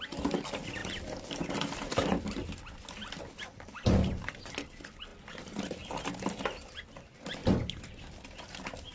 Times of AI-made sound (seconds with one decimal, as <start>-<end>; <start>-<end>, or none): 0.0-5.1; 6.9-7.4; 8.0-8.9